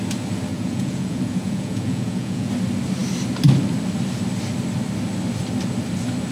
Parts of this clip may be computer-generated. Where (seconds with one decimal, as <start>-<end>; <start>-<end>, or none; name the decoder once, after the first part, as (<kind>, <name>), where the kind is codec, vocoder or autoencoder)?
0.5-2.5 (vocoder, Vocos)